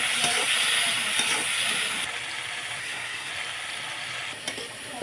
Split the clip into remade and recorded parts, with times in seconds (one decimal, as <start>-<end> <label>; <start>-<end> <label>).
0.0-2.8 recorded; 2.8-3.3 remade; 3.3-5.0 recorded